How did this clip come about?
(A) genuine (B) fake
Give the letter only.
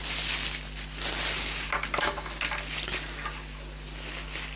A